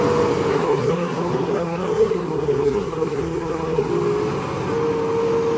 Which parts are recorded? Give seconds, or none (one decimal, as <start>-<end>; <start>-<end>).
0.0-0.5; 3.9-5.6